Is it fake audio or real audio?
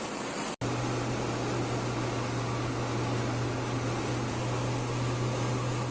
real